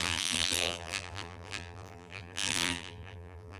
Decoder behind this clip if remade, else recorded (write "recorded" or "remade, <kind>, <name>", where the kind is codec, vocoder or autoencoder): remade, vocoder, BigVGAN v2